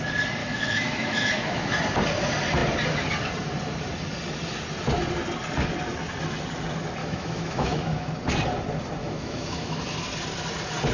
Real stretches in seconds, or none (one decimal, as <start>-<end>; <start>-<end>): 0.0-0.4; 1.7-7.0; 8.1-9.0; 9.8-10.9